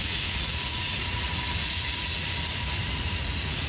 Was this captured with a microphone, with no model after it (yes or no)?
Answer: no